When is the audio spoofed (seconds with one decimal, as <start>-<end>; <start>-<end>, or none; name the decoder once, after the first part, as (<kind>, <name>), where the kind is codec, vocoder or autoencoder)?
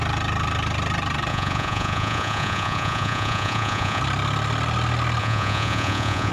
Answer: 1.3-4.0 (vocoder, Vocos); 5.2-6.3